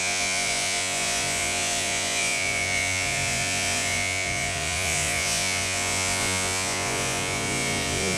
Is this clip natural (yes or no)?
no